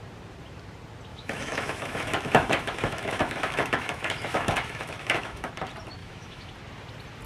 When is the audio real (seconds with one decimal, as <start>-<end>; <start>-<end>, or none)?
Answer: 0.0-1.1; 5.5-6.0; 6.5-7.3